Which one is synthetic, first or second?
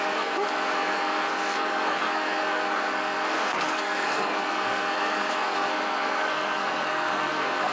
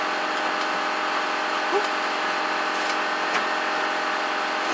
first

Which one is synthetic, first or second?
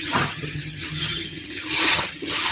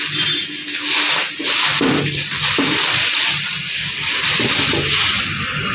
first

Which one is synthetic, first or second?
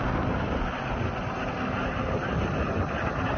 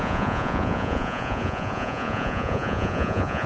second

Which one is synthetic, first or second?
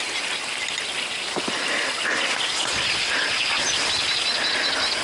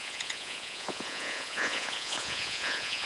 second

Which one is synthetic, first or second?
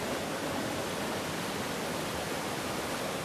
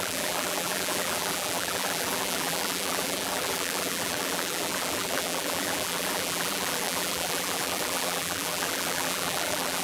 second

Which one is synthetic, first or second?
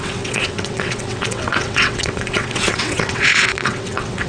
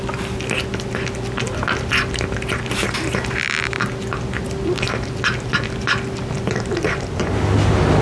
first